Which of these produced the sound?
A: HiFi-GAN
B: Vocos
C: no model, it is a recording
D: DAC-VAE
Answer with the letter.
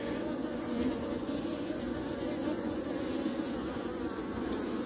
B